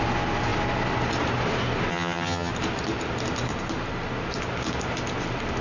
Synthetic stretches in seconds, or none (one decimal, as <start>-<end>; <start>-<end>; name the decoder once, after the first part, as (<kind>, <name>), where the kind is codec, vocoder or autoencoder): 1.9-2.5 (vocoder, HiFi-GAN)